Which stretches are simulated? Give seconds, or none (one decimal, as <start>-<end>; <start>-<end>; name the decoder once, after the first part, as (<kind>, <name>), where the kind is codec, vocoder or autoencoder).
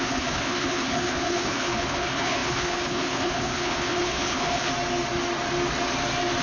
0.0-4.7 (codec, HILCodec)